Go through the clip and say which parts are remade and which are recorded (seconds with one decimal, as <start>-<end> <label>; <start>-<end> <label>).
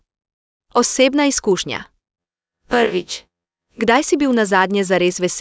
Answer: 0.0-2.2 recorded; 2.2-3.8 remade; 3.8-5.4 recorded